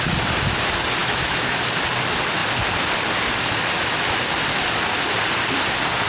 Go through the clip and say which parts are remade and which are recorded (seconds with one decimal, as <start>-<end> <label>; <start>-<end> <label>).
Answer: 0.0-1.0 recorded; 1.0-1.6 remade; 1.6-6.1 recorded